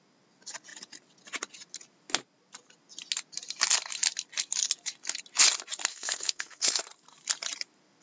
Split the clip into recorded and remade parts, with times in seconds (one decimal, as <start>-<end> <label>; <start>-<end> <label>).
0.0-5.9 recorded; 5.9-6.8 remade; 6.8-8.0 recorded